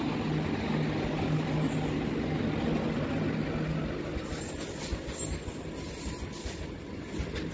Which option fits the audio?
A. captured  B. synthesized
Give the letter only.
A